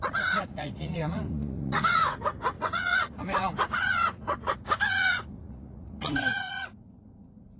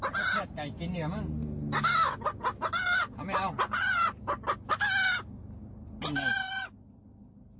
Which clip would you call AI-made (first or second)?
first